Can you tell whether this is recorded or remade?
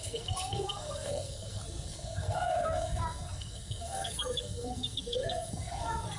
remade